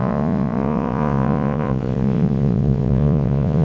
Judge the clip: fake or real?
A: fake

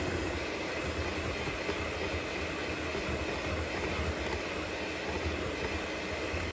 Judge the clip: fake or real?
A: real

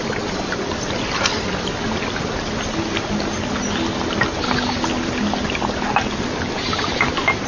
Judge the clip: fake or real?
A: real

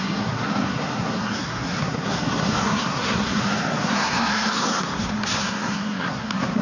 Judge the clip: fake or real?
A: fake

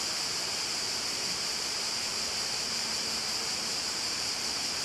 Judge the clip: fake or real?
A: fake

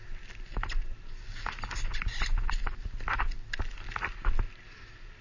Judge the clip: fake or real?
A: real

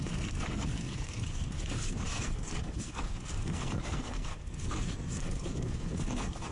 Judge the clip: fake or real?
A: fake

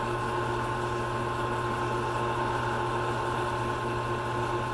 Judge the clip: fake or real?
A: real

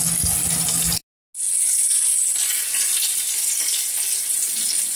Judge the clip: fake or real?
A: real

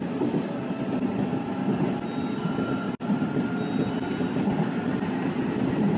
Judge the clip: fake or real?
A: real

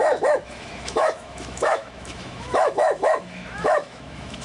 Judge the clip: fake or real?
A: fake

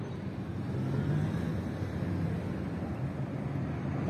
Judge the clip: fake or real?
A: real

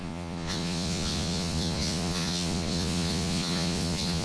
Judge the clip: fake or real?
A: fake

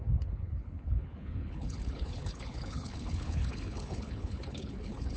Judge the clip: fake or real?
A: fake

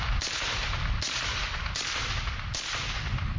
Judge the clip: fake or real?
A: real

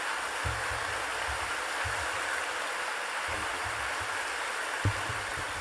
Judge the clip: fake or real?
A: real